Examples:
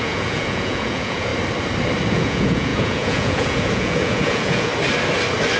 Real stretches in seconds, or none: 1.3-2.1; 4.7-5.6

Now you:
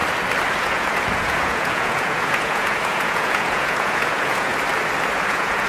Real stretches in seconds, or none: 0.0-0.6; 4.5-5.3

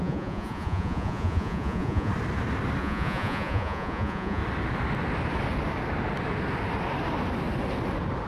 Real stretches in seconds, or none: 2.1-2.8; 4.4-8.3

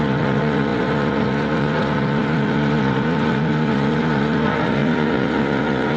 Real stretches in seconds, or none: none

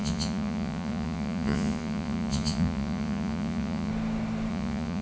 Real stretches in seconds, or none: 3.9-4.5

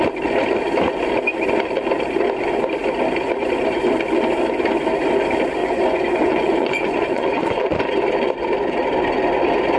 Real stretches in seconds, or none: 0.0-5.6; 7.8-9.8

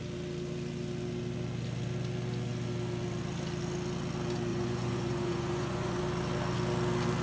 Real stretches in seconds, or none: 0.0-4.5; 6.0-7.2

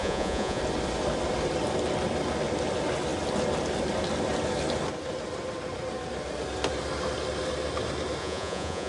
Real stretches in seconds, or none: 0.6-8.2